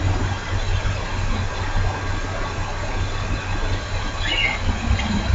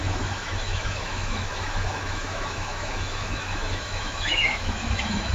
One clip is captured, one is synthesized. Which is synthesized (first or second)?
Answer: second